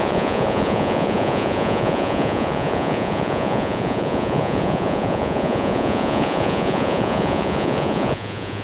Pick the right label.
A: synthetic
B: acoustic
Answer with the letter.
A